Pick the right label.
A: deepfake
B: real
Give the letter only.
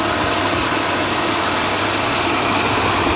B